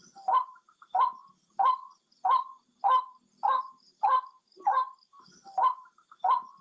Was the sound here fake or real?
real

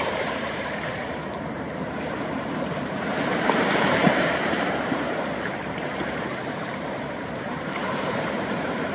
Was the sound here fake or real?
fake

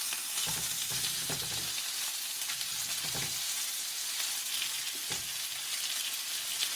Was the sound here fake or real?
real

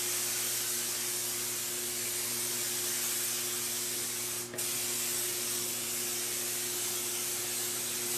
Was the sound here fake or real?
real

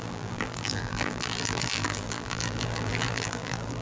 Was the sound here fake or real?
fake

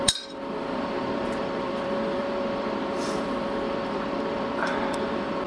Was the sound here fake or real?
fake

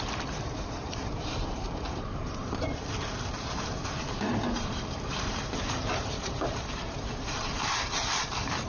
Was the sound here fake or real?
fake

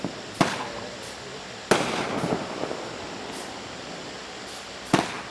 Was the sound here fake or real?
real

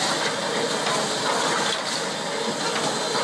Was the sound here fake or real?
real